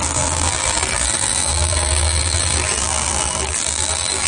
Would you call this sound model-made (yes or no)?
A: yes